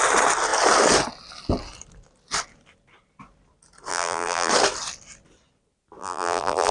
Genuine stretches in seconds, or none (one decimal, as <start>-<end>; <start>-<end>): 0.0-3.9; 4.5-6.0